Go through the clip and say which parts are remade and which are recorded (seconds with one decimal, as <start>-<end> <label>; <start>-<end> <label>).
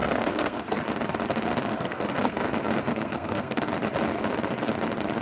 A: 0.0-0.8 remade; 0.8-1.7 recorded; 1.7-2.4 remade; 2.4-2.9 recorded; 2.9-3.6 remade; 3.6-5.2 recorded